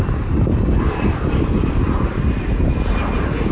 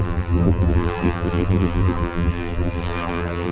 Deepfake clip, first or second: second